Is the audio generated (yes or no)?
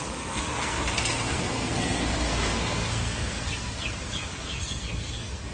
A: yes